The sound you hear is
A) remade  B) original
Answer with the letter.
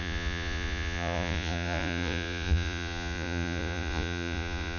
A